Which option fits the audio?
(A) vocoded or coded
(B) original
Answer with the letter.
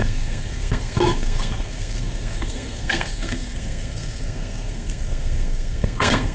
A